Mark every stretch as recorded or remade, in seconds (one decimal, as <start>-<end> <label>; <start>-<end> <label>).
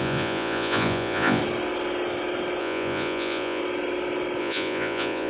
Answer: 0.0-1.4 remade; 1.4-2.6 recorded; 2.6-3.6 remade; 3.6-4.4 recorded; 4.4-5.3 remade